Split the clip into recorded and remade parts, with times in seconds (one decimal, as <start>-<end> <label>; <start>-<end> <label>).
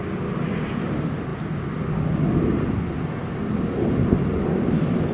0.0-5.1 recorded